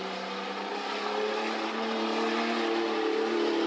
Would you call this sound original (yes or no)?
yes